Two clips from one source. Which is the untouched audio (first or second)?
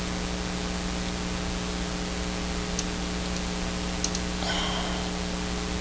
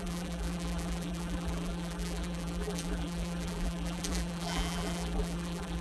first